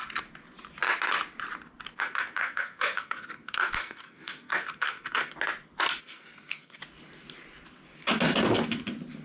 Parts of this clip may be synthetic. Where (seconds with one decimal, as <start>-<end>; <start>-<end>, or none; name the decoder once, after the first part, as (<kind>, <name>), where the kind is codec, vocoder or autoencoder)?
1.9-5.3 (codec, SNAC); 6.0-6.8